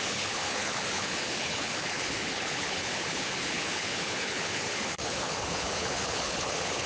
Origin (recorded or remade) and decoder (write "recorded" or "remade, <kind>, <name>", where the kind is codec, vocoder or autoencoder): remade, codec, HILCodec